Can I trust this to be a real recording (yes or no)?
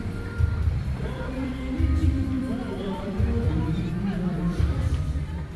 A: no